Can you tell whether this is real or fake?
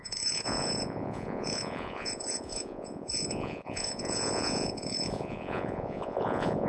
fake